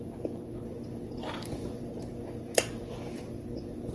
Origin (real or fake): fake